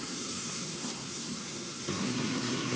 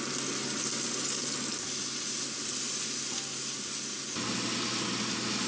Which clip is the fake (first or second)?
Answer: first